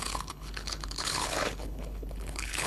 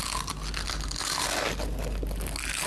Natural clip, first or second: second